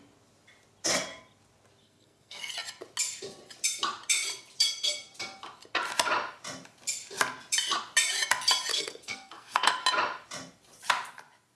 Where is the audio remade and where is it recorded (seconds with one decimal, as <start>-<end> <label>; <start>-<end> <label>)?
0.0-1.8 recorded; 1.8-2.5 remade; 2.5-8.7 recorded; 8.7-9.8 remade; 9.8-11.5 recorded